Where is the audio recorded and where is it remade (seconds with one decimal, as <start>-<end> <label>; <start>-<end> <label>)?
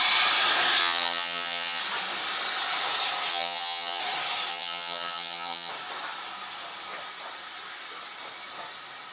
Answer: 0.0-0.8 recorded; 0.8-1.8 remade; 1.8-3.3 recorded; 3.3-4.0 remade; 4.0-4.5 recorded; 4.5-5.7 remade; 5.7-9.1 recorded